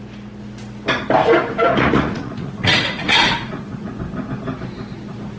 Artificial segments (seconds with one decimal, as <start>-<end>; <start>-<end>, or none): 1.7-3.9